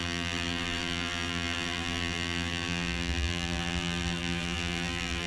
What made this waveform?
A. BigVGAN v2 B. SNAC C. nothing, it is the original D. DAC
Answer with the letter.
A